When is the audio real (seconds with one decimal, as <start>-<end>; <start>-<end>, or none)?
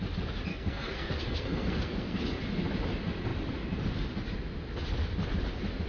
0.0-0.5; 2.2-5.9